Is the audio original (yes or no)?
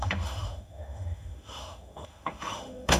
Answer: no